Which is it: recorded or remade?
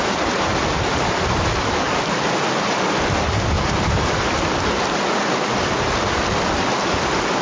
remade